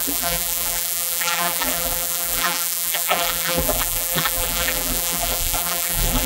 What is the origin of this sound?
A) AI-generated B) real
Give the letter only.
A